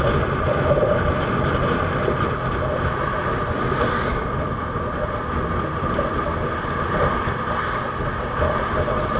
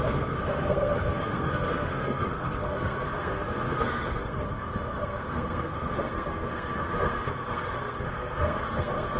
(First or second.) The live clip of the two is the first